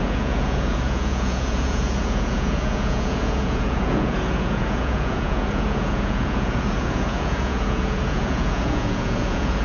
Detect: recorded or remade remade